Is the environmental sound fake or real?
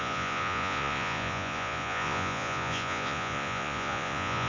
fake